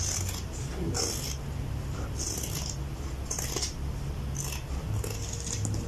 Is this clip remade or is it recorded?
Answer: recorded